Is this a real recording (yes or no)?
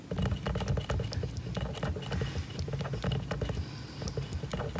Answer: yes